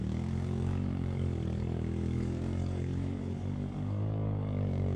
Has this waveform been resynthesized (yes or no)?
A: yes